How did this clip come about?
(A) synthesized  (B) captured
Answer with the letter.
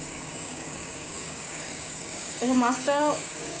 A